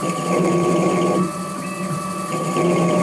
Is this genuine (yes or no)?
yes